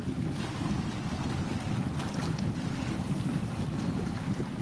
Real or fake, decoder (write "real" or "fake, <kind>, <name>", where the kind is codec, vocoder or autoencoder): real